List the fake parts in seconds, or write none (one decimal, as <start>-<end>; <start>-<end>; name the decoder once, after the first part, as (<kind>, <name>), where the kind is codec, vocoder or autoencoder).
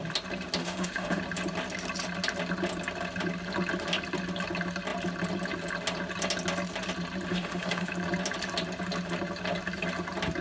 0.6-1.2 (autoencoder, DAC-VAE); 7.3-7.9